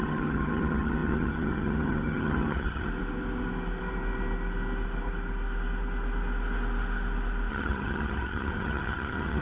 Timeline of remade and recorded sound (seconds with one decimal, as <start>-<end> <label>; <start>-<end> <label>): 0.0-2.9 remade; 2.9-7.5 recorded; 7.5-9.4 remade